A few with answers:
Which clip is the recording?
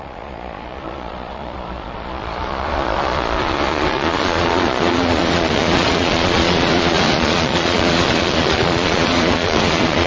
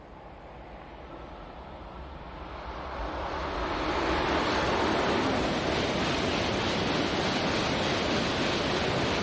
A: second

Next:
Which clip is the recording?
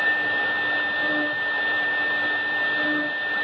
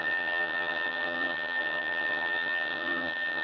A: first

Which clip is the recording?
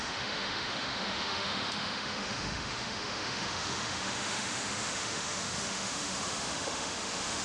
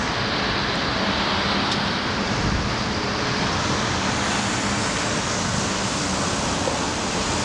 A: second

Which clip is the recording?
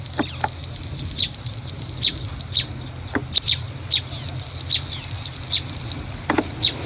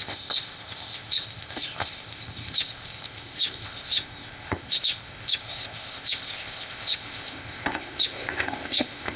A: first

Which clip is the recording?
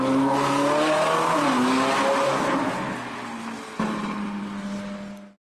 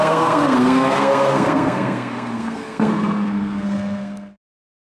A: first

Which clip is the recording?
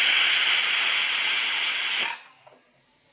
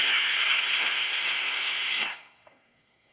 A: first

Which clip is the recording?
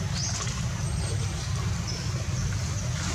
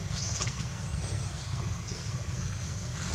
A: first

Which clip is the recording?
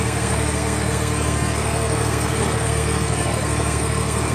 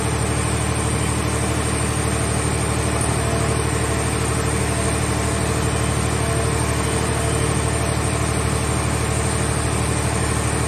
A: second